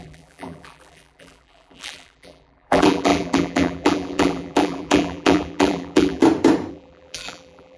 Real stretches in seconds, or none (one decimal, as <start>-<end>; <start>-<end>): 6.2-6.7